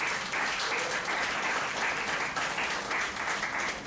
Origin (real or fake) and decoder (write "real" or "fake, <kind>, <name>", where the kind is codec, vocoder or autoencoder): real